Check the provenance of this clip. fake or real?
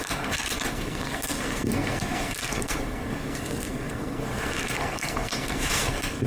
fake